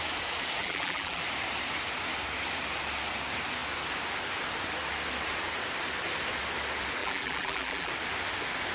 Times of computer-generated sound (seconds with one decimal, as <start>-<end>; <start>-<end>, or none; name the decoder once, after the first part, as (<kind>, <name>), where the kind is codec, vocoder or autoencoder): 0.6-1.2 (vocoder, BigVGAN v2); 7.0-7.9